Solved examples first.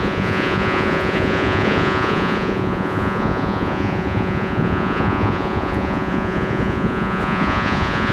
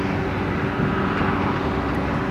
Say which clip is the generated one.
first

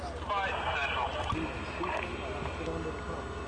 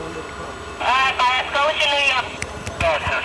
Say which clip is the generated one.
second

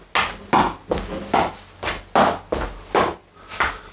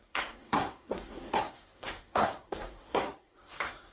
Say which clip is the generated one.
second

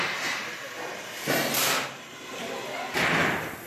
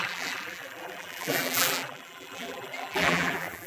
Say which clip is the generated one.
second